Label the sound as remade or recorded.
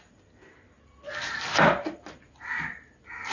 recorded